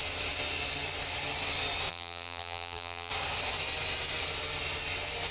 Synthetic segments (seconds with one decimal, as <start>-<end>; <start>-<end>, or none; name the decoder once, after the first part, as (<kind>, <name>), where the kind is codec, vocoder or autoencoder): 1.9-3.1 (vocoder, BigVGAN v2)